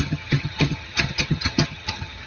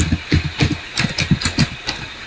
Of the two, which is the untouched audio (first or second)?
second